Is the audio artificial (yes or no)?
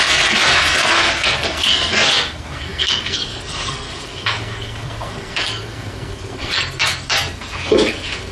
yes